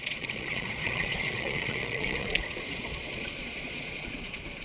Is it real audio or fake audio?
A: fake